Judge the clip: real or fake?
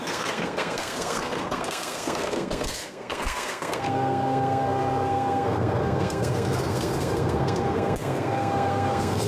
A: fake